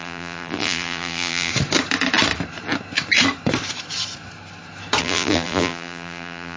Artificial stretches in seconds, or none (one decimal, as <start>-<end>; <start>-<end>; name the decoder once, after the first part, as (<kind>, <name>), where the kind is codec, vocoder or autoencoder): 0.0-1.5 (vocoder, BigVGAN v2); 5.0-6.6